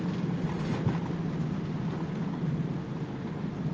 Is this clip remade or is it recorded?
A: recorded